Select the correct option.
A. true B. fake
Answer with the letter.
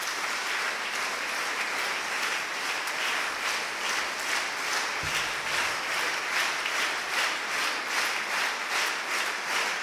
A